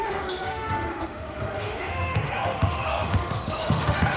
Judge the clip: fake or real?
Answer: fake